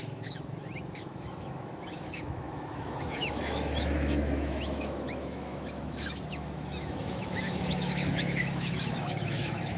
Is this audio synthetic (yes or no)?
yes